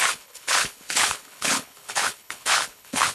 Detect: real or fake fake